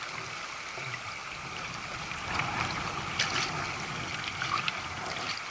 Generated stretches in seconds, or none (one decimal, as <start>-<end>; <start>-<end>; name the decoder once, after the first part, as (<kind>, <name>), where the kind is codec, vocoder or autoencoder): 0.0-3.3 (vocoder, BigVGAN v2); 5.0-5.5